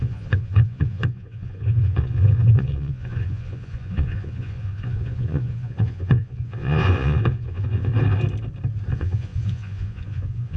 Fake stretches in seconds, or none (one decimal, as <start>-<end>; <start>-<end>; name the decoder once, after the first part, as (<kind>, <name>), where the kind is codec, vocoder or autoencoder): 0.0-7.9 (vocoder, Vocos); 8.9-10.6